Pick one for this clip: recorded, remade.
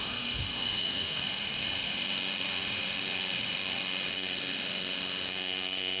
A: remade